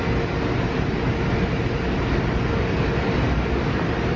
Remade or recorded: recorded